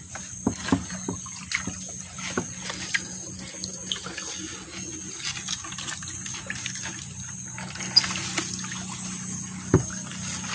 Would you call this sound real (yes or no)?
yes